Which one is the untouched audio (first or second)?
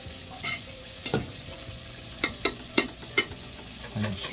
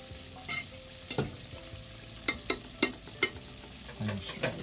second